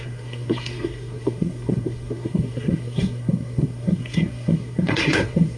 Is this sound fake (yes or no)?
yes